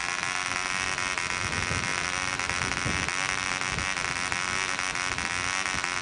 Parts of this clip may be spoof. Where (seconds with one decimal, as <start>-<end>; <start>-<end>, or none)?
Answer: 1.9-3.5